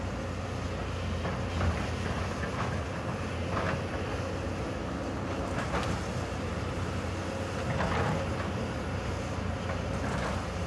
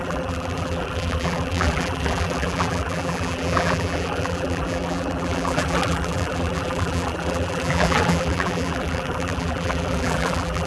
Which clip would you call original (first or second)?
first